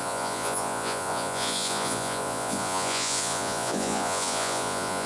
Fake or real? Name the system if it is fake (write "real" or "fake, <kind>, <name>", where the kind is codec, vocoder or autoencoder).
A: fake, vocoder, Vocos